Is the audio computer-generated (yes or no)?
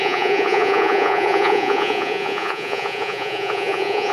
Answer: yes